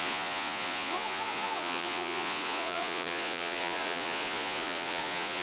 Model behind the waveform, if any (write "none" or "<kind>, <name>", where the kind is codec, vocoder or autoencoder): vocoder, Vocos